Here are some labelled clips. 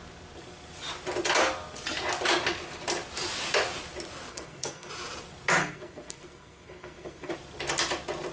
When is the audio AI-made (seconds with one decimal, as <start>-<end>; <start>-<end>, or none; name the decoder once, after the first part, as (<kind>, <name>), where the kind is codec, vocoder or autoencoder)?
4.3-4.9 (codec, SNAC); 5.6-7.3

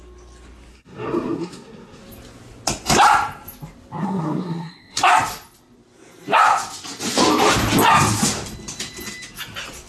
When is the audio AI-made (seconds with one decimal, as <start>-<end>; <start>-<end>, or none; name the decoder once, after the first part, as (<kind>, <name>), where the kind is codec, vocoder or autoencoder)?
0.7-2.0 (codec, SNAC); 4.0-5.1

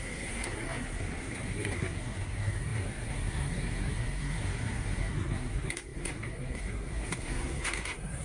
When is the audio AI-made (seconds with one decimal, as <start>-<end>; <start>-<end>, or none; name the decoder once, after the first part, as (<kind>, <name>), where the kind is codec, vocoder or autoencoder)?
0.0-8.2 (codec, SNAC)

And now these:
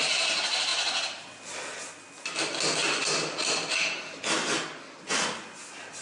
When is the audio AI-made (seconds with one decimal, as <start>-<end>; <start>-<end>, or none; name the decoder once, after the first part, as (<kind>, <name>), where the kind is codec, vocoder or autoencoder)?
none

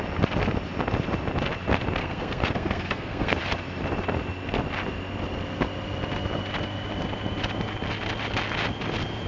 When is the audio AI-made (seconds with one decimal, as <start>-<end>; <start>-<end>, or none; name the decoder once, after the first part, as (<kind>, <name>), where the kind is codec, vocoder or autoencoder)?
2.0-3.4 (codec, SNAC)

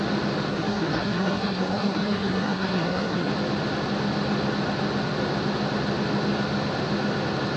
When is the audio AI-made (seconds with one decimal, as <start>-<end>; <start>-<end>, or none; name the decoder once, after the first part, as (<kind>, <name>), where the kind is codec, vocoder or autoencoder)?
0.5-3.3 (codec, SNAC)